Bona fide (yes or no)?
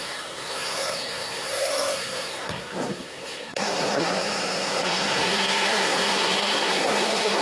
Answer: no